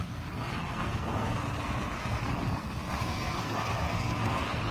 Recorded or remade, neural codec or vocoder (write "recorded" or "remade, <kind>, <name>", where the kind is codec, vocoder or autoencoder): remade, codec, SNAC